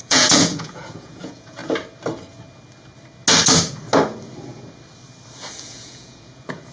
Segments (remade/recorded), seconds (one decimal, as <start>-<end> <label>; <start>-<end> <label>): 0.0-1.6 remade; 1.6-5.6 recorded; 5.6-6.7 remade